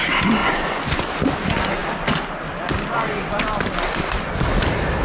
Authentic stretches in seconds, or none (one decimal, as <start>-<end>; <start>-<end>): 0.0-0.4; 1.0-5.0